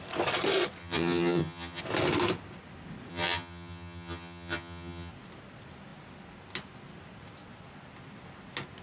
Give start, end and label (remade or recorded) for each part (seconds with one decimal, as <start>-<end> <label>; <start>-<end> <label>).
0.0-0.8 recorded; 0.8-1.8 remade; 1.8-3.1 recorded; 3.1-5.1 remade; 5.1-8.8 recorded

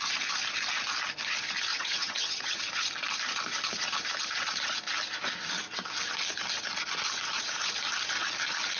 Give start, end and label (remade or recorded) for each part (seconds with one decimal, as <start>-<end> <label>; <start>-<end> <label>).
0.0-1.7 recorded; 1.7-2.6 remade; 2.6-8.8 recorded

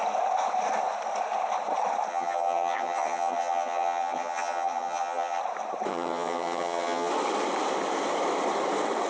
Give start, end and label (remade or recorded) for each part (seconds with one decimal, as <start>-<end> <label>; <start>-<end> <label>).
0.0-2.1 recorded; 2.1-5.4 remade; 5.4-5.9 recorded; 5.9-7.1 remade; 7.1-9.1 recorded

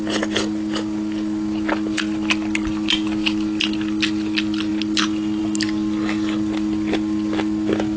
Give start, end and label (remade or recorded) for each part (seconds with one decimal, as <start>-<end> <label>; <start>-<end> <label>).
0.0-8.0 recorded

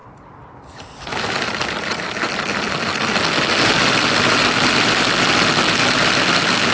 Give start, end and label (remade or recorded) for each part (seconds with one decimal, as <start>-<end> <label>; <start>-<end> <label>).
0.0-6.7 recorded

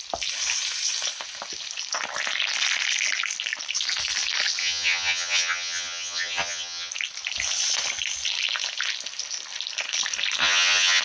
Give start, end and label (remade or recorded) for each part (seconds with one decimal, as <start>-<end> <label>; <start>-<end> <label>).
0.0-4.6 recorded; 4.6-6.9 remade; 6.9-10.4 recorded; 10.4-11.0 remade

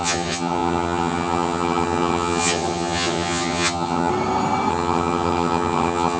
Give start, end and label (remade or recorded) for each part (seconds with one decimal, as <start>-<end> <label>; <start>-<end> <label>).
0.0-4.1 remade; 4.1-4.7 recorded; 4.7-6.2 remade